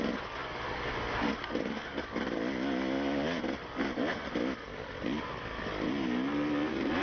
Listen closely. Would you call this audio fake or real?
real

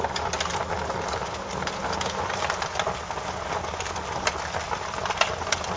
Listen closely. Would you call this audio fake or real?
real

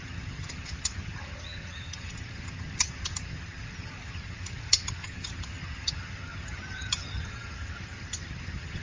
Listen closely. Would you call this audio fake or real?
fake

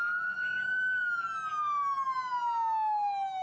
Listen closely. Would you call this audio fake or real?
real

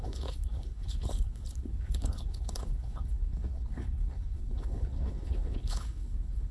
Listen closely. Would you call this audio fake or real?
fake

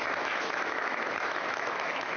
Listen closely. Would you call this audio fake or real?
fake